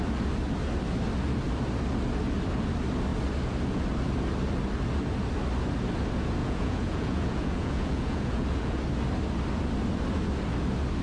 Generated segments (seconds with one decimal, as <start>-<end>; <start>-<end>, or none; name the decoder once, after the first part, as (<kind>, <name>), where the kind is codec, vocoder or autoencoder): 6.4-8.8 (vocoder, Vocos)